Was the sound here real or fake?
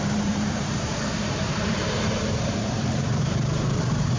fake